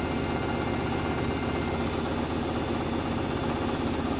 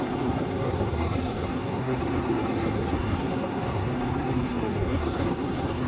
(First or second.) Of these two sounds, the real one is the first